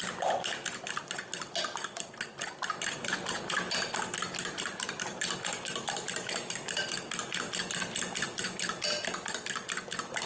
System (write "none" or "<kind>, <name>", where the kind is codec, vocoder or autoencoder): none